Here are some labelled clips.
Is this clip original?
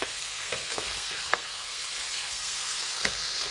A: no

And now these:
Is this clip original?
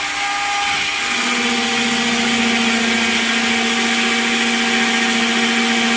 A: yes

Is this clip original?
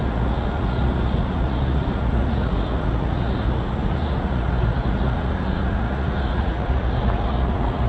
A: no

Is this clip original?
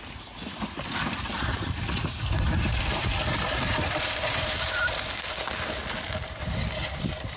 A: yes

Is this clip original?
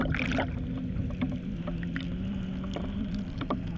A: yes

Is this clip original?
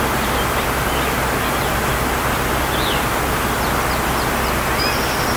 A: yes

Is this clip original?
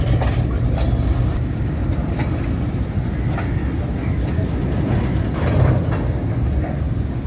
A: yes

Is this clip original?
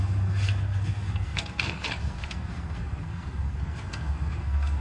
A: no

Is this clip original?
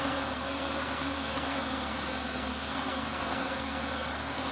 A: no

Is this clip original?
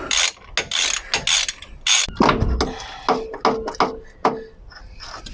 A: yes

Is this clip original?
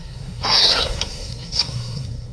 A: no